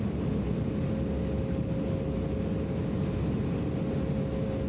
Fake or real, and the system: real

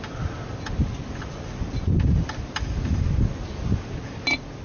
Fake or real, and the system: real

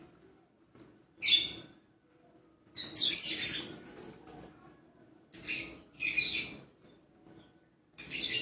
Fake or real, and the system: real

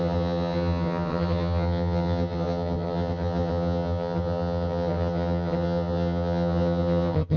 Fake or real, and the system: fake, vocoder, HiFi-GAN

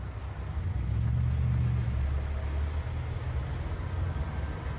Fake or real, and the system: real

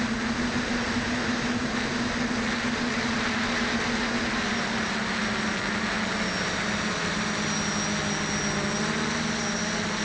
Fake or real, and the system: real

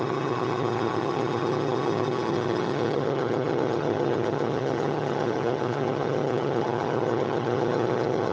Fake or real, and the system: fake, vocoder, HiFi-GAN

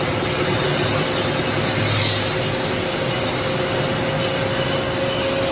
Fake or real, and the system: real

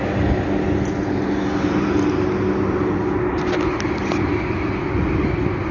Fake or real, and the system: real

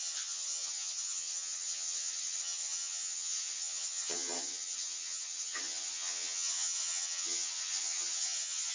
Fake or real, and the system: fake, vocoder, HiFi-GAN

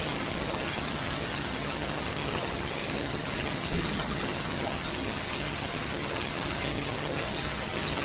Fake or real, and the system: fake, vocoder, HiFi-GAN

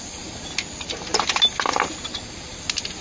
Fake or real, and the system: real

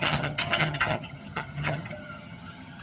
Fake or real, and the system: fake, vocoder, HiFi-GAN